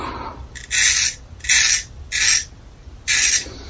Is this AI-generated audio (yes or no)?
no